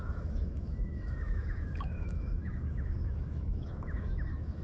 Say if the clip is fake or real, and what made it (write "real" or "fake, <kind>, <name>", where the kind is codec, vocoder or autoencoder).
fake, autoencoder, DAC-VAE